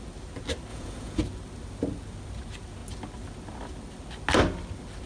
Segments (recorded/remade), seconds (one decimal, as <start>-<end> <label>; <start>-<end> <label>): 0.0-0.7 recorded; 0.7-1.2 remade; 1.2-5.1 recorded